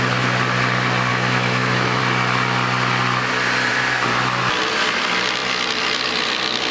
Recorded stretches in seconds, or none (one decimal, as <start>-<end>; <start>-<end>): 0.0-1.1; 2.0-6.7